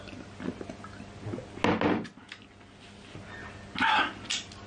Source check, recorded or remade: recorded